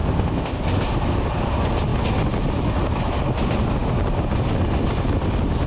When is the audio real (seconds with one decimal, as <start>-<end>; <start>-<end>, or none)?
0.6-5.7